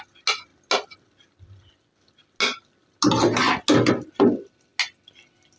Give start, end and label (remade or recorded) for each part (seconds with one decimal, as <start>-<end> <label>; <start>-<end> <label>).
0.0-5.6 recorded